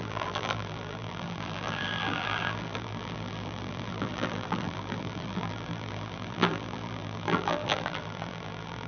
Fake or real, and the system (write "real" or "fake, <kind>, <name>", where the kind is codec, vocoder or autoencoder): fake, vocoder, BigVGAN v2